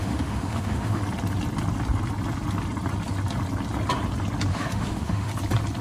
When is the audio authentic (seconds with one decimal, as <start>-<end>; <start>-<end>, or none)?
1.0-4.5; 5.3-5.8